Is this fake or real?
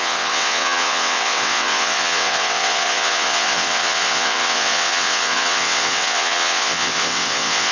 fake